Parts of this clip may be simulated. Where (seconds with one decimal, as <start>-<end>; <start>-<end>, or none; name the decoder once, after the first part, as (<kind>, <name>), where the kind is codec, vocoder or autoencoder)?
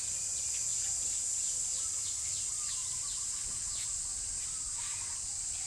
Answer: none